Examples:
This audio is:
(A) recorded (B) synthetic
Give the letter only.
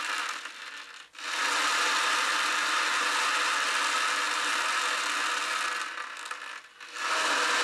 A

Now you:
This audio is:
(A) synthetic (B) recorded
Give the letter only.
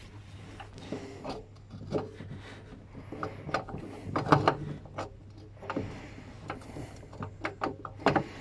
B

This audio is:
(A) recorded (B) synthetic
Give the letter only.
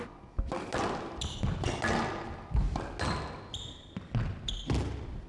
A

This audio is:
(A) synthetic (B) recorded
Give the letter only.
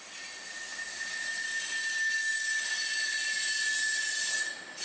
B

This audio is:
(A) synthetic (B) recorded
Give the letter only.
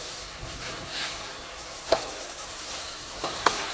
A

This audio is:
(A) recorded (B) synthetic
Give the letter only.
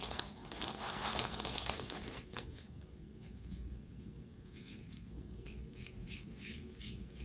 B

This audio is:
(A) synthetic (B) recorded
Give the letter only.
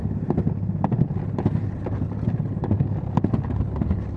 B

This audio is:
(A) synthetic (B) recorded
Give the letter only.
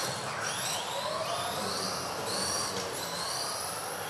B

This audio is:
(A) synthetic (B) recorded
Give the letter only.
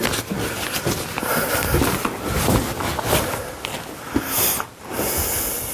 B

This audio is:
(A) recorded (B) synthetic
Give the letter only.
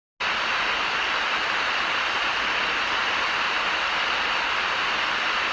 A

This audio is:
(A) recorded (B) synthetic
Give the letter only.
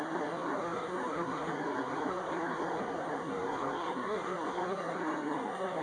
B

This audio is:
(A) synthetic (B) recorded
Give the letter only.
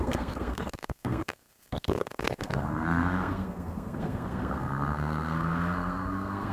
A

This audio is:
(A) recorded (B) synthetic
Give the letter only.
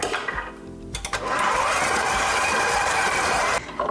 A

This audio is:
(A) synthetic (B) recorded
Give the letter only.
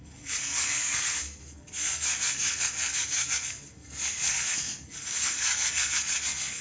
A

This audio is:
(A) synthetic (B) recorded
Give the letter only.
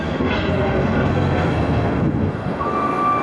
A